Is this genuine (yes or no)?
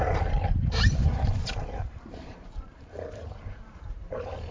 no